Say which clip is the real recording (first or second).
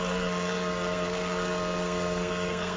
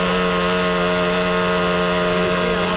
second